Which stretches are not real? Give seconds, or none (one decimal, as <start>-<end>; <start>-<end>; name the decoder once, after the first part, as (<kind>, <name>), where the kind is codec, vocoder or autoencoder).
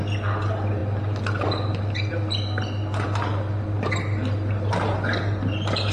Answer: none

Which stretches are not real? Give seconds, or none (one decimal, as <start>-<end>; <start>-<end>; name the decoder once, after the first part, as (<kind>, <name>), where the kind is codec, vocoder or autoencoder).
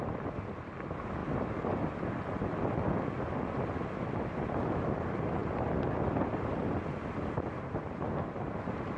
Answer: none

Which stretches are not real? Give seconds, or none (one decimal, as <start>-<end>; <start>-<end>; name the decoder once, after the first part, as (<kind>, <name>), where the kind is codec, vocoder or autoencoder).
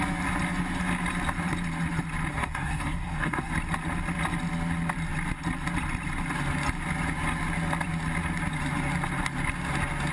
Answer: 2.3-3.5 (codec, SNAC)